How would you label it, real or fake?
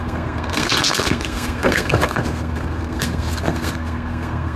fake